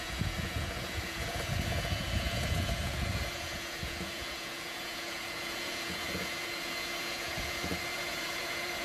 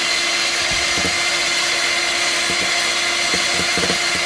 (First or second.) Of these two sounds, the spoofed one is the first